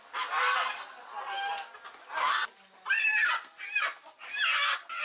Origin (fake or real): real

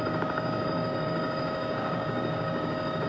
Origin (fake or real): fake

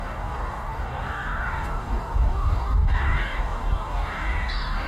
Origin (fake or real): fake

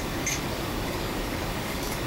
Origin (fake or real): fake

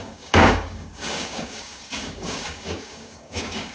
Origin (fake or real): fake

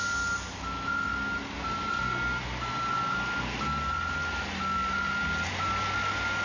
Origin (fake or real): real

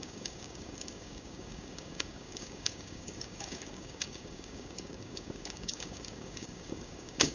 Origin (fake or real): fake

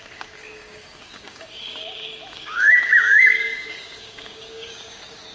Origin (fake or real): fake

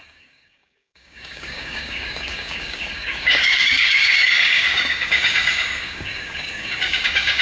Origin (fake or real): fake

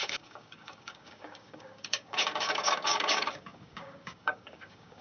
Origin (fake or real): fake